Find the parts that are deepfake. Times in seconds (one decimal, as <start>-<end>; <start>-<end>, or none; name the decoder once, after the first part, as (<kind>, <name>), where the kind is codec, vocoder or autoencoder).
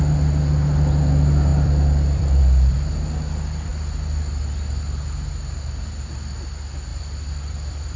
1.5-2.4 (vocoder, BigVGAN v2); 6.9-8.0